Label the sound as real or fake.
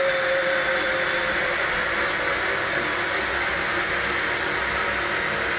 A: real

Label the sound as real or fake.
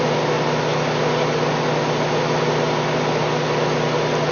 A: real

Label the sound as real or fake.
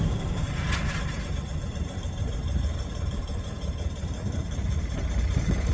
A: fake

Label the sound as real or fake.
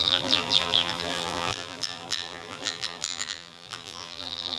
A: fake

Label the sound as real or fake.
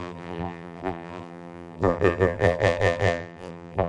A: fake